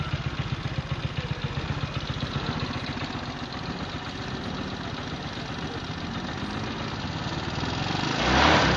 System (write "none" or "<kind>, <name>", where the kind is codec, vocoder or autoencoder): none